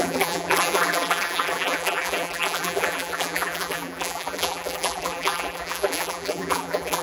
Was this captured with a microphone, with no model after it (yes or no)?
no